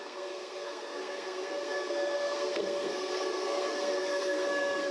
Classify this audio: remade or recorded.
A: remade